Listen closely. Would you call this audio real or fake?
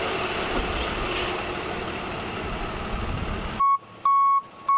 real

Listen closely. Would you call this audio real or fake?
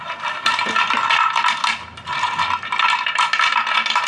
real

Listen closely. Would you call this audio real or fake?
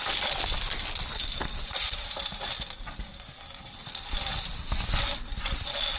real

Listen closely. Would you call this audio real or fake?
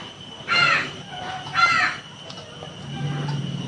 real